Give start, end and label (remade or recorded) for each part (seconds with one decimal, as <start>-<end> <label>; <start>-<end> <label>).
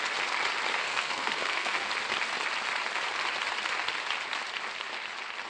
0.0-0.7 recorded; 0.7-1.9 remade; 1.9-5.5 recorded